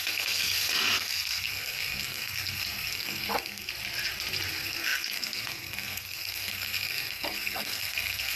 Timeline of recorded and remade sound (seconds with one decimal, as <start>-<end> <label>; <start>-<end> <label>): 0.0-3.7 remade; 3.7-4.5 recorded; 4.5-8.4 remade